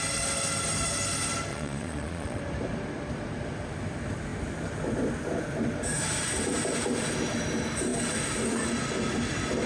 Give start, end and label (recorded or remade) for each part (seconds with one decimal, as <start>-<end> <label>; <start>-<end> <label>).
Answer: 0.0-1.5 recorded; 1.5-2.4 remade; 2.4-9.7 recorded